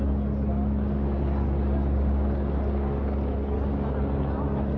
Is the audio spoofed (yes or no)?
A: no